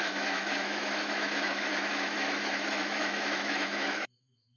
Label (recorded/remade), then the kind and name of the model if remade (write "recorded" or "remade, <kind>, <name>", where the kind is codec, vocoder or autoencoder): remade, autoencoder, DAC-VAE